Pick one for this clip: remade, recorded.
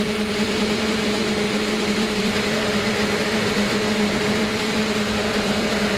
remade